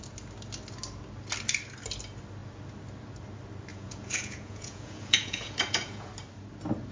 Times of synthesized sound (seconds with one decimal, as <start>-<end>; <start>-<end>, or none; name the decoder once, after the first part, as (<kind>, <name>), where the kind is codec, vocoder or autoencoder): 3.7-6.1 (vocoder, Vocos)